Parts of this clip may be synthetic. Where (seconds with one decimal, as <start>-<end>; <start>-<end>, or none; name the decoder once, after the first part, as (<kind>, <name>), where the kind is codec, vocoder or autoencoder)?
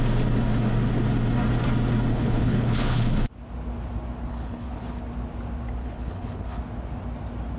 2.1-3.3 (codec, HILCodec); 4.3-5.0; 5.8-6.6